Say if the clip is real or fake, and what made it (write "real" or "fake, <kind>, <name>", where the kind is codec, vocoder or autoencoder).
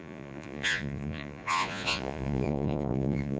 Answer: fake, vocoder, Vocos